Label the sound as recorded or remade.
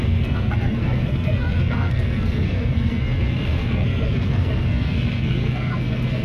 remade